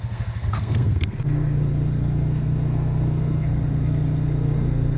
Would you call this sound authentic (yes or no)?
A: no